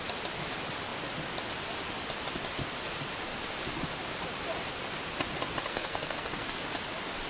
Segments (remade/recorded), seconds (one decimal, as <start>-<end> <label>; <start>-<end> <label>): 0.0-5.7 recorded; 5.7-6.6 remade; 6.6-7.3 recorded